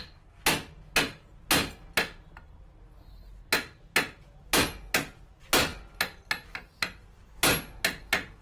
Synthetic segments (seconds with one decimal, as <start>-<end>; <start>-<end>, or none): none